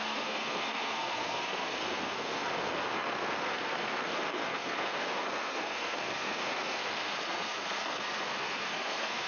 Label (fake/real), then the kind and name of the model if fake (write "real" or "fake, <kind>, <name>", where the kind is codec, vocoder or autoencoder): fake, codec, SNAC